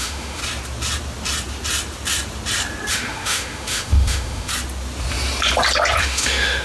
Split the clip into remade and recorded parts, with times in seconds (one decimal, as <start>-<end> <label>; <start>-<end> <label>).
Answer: 0.0-0.4 remade; 0.4-2.9 recorded; 2.9-4.5 remade; 4.5-6.0 recorded; 6.0-6.6 remade